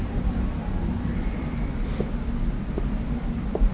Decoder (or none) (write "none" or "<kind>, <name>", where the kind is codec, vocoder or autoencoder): vocoder, BigVGAN v2